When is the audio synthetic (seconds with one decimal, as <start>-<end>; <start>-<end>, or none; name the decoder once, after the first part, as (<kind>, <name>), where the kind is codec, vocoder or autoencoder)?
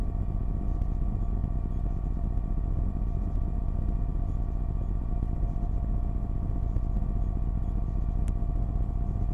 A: none